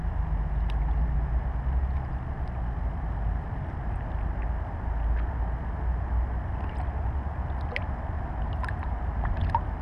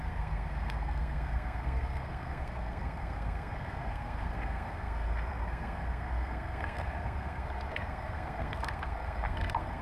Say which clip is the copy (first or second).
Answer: second